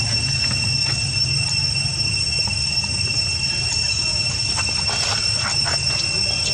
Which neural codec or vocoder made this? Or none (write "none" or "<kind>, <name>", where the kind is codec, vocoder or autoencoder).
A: none